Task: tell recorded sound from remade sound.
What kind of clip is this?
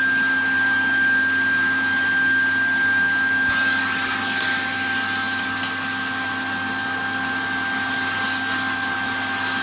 recorded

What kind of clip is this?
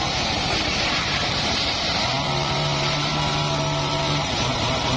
remade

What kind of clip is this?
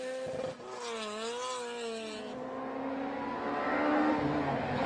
recorded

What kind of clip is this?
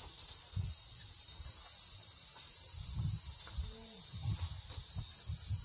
remade